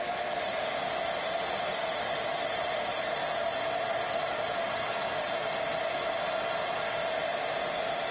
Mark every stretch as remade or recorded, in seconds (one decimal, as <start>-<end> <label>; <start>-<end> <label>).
0.0-8.1 recorded

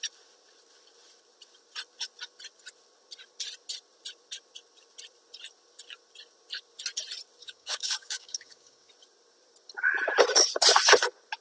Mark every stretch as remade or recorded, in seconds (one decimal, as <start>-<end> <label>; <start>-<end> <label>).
0.0-7.4 recorded; 7.4-8.9 remade; 8.9-11.4 recorded

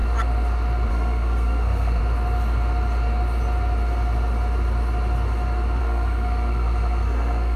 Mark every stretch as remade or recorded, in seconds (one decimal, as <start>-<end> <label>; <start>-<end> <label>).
0.0-0.9 recorded; 0.9-2.0 remade; 2.0-5.8 recorded; 5.8-7.6 remade

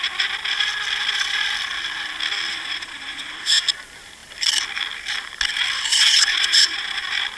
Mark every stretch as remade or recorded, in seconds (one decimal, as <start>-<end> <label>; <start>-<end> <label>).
0.0-2.5 recorded; 2.5-3.6 remade; 3.6-5.9 recorded; 5.9-7.0 remade; 7.0-7.4 recorded

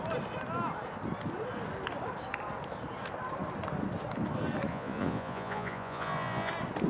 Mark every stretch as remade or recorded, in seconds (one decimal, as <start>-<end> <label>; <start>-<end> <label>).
0.0-4.7 recorded; 4.7-6.5 remade; 6.5-6.9 recorded